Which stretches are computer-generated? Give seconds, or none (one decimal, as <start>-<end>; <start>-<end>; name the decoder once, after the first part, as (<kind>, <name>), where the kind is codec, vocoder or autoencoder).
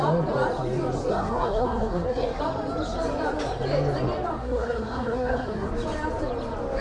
1.1-2.4 (codec, SNAC); 4.4-5.7